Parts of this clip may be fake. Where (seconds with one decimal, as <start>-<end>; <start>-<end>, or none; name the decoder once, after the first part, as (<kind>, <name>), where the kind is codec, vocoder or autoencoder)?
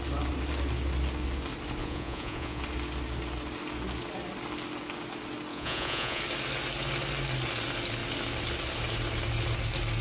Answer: 1.8-2.6 (vocoder, Vocos); 5.5-6.2